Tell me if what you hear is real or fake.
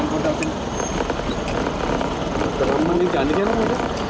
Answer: real